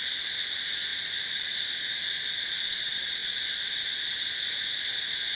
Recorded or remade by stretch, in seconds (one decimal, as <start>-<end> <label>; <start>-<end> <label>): 0.0-5.3 recorded